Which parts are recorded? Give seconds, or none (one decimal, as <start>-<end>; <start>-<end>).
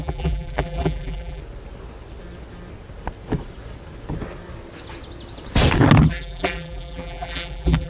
1.4-6.1